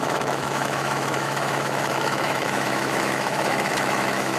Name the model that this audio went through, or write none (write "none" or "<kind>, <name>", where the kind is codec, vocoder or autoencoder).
autoencoder, DAC-VAE